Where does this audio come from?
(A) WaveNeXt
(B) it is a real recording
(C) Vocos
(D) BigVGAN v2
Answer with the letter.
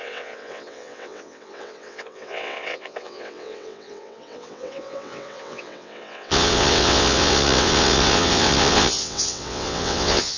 A